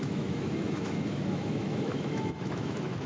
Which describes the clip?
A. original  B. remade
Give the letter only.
B